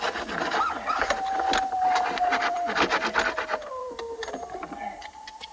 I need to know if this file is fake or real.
fake